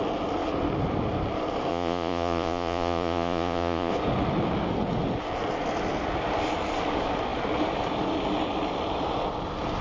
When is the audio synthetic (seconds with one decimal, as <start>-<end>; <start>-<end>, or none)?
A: 1.7-3.9